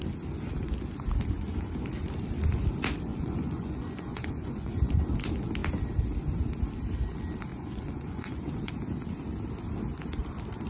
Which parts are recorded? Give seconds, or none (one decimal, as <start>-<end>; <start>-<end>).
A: 0.0-3.1; 5.0-7.5; 8.7-10.7